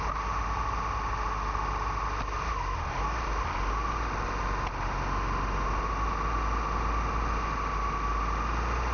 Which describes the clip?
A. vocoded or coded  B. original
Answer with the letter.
B